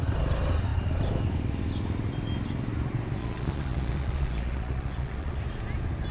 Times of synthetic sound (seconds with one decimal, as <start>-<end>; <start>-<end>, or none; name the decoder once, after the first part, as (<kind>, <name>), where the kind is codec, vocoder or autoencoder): 3.2-5.4 (vocoder, Vocos)